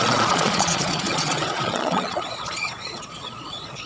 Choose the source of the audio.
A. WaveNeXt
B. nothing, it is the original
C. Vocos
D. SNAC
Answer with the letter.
C